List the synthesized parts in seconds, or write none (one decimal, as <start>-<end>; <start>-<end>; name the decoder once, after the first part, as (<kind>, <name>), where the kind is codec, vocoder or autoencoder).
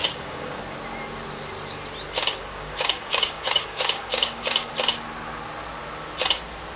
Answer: 0.0-0.6 (codec, DAC); 2.2-4.7